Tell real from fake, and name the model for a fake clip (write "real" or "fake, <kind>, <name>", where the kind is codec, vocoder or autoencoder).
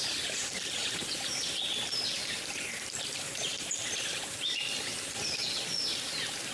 fake, vocoder, BigVGAN v2